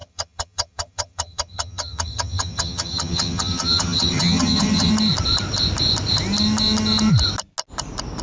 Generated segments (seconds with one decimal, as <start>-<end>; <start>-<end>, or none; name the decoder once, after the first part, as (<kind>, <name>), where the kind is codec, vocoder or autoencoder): 0.0-4.9 (vocoder, HiFi-GAN)